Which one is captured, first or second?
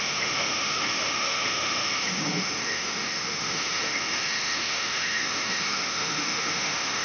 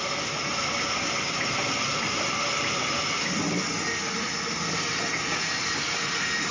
second